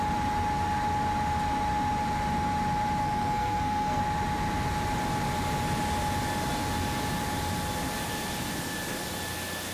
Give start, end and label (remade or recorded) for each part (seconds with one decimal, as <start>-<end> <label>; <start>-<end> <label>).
0.0-3.0 recorded; 3.0-4.0 remade; 4.0-9.7 recorded